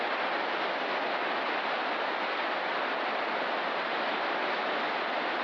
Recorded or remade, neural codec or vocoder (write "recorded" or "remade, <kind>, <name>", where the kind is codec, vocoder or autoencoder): recorded